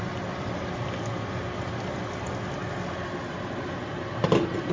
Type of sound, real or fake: real